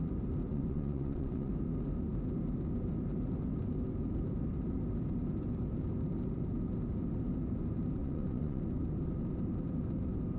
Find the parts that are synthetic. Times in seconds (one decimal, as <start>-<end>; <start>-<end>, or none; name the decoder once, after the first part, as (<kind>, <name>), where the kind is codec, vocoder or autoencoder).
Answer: 0.5-1.5 (vocoder, Vocos); 8.0-8.6